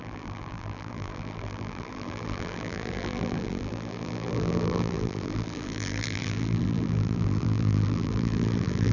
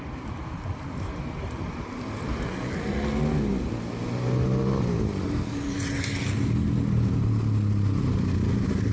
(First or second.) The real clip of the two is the second